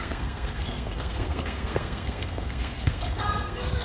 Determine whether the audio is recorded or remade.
remade